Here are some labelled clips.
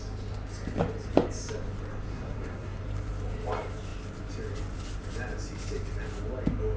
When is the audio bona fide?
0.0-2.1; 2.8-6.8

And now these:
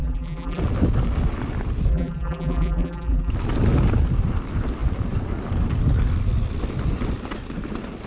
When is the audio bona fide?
0.6-1.9; 3.3-8.1

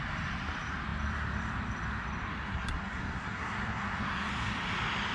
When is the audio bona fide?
0.0-2.3; 4.3-5.1

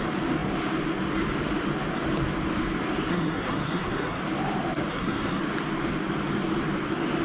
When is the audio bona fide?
0.0-3.1; 4.2-4.9; 5.4-7.2

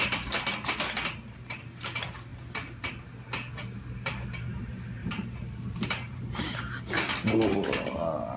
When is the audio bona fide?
0.0-5.0; 6.6-8.4

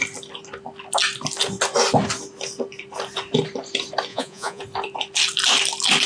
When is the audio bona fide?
0.0-4.1; 4.6-6.1

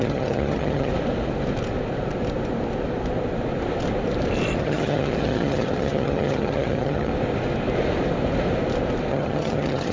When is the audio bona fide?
0.9-4.6; 7.1-9.1

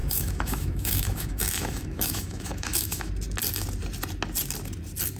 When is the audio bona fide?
3.1-5.2